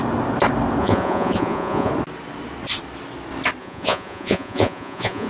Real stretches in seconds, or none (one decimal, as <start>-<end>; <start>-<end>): 0.0-0.8; 1.9-3.6